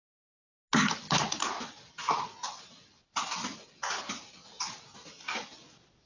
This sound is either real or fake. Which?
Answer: real